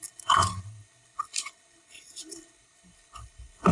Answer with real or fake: fake